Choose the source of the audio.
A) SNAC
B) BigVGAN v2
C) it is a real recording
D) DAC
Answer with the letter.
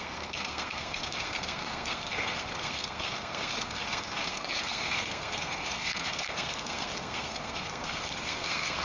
A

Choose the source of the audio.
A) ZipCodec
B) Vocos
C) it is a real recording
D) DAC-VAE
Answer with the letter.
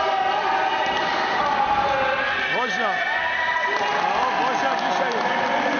C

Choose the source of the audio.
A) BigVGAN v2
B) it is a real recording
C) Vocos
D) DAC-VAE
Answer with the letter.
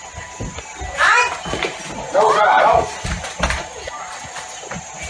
B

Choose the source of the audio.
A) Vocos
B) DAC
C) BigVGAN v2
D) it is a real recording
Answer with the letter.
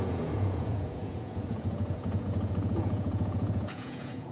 A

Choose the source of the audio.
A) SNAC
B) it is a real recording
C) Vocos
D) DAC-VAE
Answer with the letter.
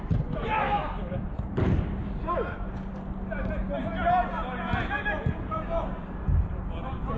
B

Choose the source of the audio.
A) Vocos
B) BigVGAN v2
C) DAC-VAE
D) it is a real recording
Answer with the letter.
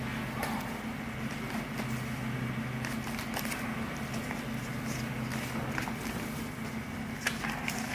D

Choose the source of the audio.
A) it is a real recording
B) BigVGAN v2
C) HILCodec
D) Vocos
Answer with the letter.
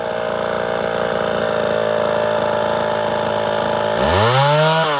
A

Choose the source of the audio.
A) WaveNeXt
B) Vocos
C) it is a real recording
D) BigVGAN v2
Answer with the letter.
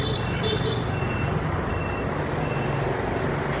C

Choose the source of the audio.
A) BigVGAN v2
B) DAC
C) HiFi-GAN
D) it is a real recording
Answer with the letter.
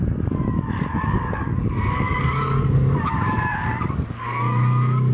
B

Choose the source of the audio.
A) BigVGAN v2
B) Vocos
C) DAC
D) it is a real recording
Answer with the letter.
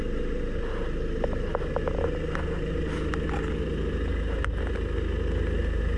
D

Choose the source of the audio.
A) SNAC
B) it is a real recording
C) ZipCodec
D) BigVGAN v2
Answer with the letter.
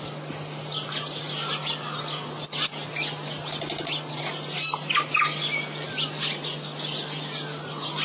B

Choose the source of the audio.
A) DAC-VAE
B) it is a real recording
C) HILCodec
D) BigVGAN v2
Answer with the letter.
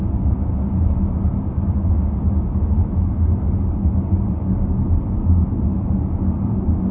B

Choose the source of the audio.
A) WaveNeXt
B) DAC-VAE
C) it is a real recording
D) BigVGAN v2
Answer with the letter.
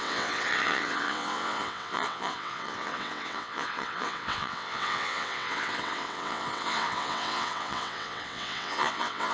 A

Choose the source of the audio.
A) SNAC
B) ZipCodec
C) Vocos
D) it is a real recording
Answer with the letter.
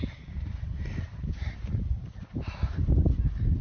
D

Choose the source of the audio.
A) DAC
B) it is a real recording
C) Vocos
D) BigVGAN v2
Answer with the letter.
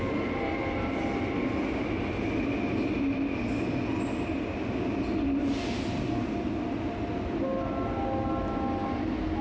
B